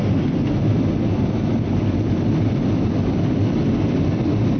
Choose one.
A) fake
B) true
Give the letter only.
B